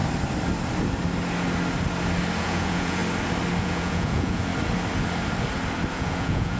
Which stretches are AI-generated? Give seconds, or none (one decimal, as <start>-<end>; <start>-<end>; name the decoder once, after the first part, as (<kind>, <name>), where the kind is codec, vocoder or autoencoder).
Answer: 2.4-3.0 (vocoder, Vocos); 3.6-4.5; 5.9-6.6